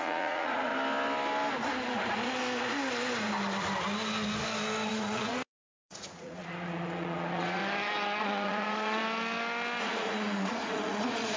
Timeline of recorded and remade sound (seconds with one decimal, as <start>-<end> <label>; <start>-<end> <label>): 0.0-0.7 remade; 0.7-4.9 recorded; 4.9-7.6 remade; 7.6-8.2 recorded; 8.2-9.0 remade; 9.0-9.8 recorded; 9.8-11.4 remade